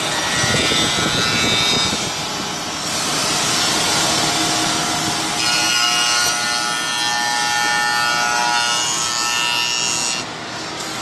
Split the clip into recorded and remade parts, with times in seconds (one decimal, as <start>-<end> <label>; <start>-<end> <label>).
0.0-1.9 recorded; 1.9-2.6 remade; 2.6-11.0 recorded